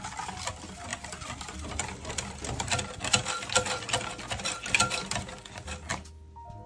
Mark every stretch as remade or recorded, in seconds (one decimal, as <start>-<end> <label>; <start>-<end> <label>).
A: 0.0-6.7 recorded